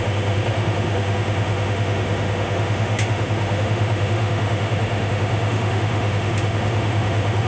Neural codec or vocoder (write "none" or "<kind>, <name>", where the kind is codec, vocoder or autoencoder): autoencoder, DAC-VAE